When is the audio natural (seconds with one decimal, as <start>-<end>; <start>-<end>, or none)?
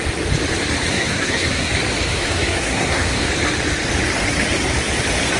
0.0-0.9; 1.7-2.1; 3.3-5.4